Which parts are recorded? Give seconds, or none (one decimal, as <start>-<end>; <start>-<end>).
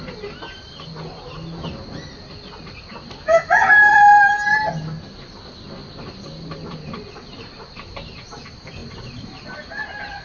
0.0-10.2